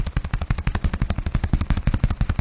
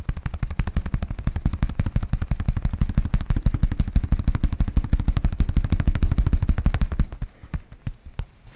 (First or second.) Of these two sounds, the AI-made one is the second